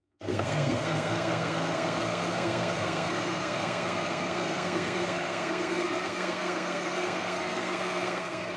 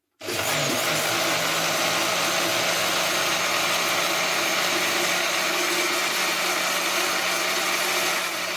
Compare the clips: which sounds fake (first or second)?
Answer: first